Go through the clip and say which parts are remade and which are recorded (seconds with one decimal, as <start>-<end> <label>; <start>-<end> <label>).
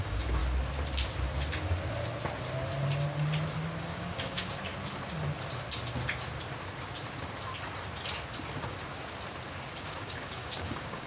0.0-0.4 remade; 0.4-3.8 recorded; 3.8-4.7 remade; 4.7-9.8 recorded; 9.8-11.1 remade